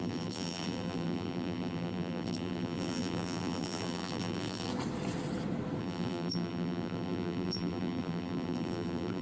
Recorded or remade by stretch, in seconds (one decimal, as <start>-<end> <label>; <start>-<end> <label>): 0.0-4.7 remade; 4.7-5.8 recorded; 5.8-9.2 remade